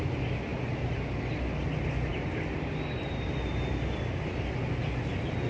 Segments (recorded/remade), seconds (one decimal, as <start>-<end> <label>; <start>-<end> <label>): 0.0-5.5 recorded